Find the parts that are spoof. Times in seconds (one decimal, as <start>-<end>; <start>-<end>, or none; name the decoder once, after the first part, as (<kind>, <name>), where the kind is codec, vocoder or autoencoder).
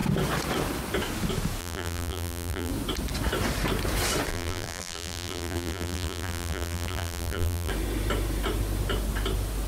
1.6-2.7 (vocoder, BigVGAN v2); 4.3-7.7